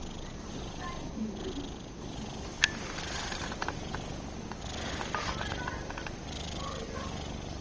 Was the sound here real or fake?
real